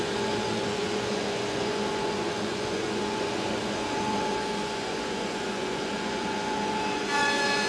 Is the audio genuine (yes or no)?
no